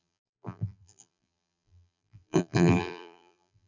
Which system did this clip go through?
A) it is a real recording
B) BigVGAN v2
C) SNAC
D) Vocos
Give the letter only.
B